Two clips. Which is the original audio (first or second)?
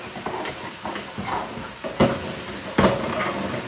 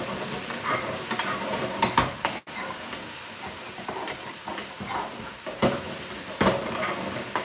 first